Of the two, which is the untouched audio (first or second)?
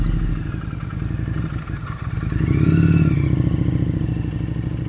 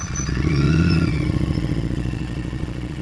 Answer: first